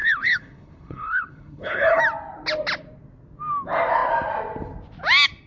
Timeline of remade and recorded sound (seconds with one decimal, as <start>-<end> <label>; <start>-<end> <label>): 0.0-2.0 remade; 2.0-5.5 recorded